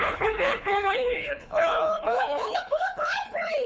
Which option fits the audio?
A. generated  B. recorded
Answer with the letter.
A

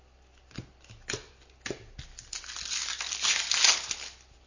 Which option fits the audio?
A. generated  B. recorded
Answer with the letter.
B